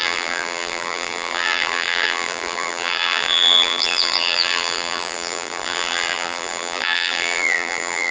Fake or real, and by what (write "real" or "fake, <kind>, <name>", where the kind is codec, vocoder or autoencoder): fake, vocoder, BigVGAN v2